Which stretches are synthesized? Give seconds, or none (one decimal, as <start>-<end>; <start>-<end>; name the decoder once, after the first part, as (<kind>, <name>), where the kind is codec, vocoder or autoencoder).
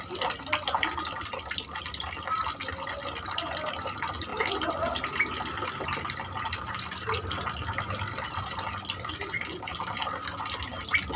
none